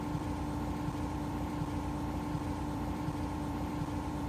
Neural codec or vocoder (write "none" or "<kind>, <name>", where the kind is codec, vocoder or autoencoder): vocoder, BigVGAN v2